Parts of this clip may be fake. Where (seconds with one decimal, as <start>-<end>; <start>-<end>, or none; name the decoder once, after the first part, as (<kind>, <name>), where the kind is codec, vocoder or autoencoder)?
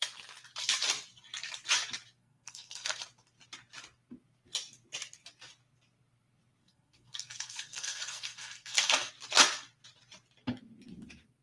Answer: 2.2-3.0 (codec, SNAC); 6.6-9.1